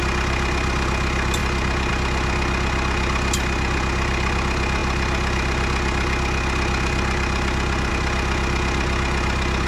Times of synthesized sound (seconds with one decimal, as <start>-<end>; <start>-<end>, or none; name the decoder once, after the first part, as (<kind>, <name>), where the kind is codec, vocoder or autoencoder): none